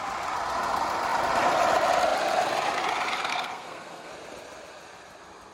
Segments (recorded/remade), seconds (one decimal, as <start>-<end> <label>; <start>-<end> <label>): 0.0-3.3 recorded; 3.3-4.1 remade; 4.1-5.5 recorded